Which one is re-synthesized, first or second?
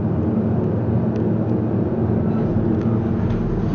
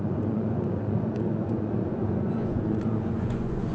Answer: second